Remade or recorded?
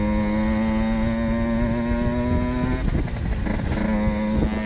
recorded